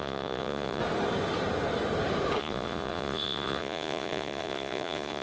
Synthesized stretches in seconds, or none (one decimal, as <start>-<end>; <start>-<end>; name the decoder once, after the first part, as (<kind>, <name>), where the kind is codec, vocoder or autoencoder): 0.0-0.8 (vocoder, Vocos); 2.4-5.2